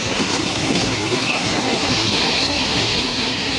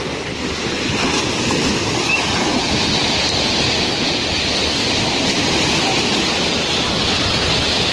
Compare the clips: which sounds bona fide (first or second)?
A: second